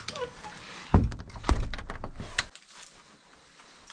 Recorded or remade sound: recorded